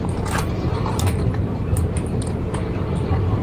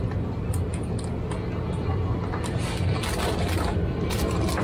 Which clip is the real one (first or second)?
second